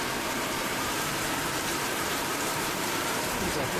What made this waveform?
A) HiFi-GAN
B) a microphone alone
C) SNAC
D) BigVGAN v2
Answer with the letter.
D